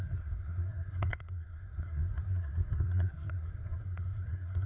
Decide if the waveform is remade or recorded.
remade